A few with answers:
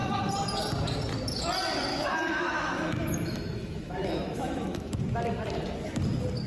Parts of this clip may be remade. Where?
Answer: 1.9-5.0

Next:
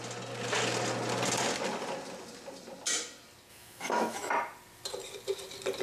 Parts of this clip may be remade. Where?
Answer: 3.5-4.3

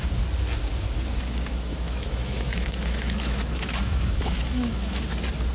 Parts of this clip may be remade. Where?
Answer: 1.7-5.0

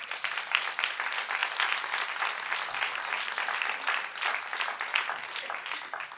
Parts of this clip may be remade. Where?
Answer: none

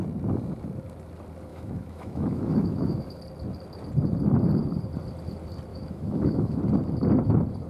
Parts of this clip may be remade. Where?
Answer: 1.5-3.2; 5.7-6.6

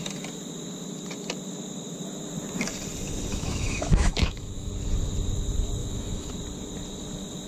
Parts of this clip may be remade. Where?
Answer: 3.3-4.7; 5.8-6.3

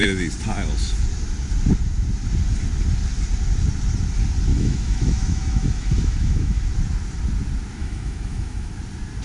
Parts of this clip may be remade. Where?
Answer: 4.5-6.6; 7.8-8.7

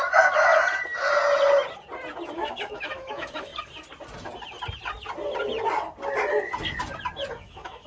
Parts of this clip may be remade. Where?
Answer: 0.0-0.5; 2.3-3.5; 7.3-7.9